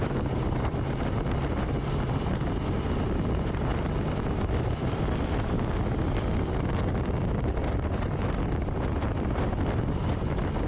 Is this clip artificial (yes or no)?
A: no